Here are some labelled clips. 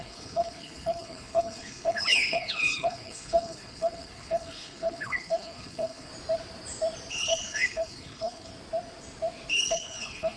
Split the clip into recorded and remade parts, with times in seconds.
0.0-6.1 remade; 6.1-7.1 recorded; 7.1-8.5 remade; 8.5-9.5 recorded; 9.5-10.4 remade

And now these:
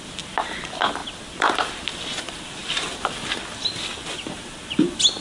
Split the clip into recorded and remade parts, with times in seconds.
0.0-5.2 recorded

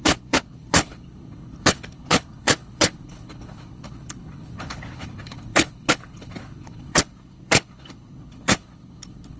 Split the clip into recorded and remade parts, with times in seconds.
0.0-9.4 remade

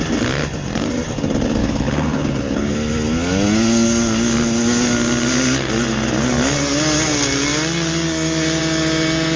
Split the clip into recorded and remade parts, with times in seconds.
0.0-1.6 recorded; 1.6-2.7 remade; 2.7-9.4 recorded